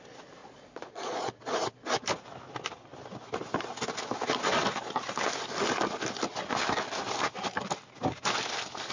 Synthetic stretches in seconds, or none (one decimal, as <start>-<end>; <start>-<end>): 0.4-1.4